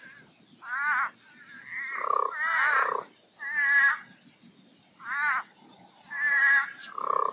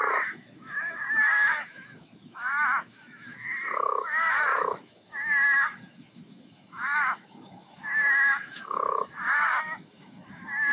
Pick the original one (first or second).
first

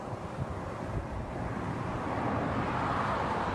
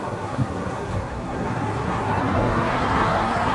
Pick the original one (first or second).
first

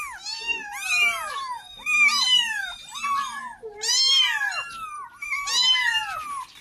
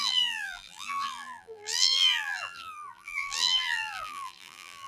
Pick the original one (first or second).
first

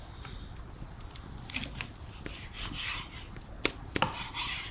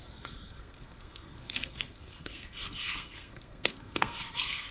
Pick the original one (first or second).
first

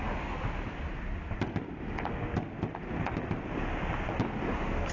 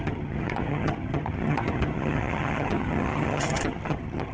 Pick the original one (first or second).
first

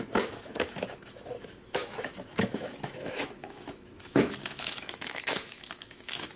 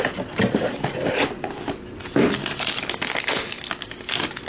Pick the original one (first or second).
second